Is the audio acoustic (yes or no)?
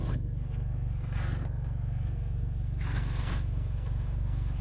no